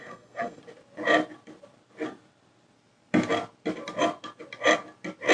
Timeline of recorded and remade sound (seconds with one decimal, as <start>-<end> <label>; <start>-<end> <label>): 0.0-0.6 remade; 0.6-5.3 recorded